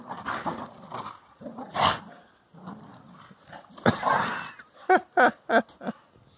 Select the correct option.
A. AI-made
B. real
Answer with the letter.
B